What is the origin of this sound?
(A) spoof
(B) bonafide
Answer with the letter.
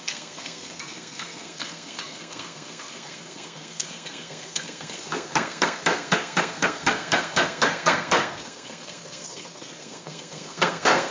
A